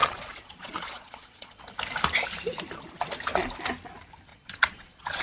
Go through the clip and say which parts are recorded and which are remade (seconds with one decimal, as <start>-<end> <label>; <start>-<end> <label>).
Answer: 0.0-1.6 remade; 1.6-4.3 recorded; 4.3-5.2 remade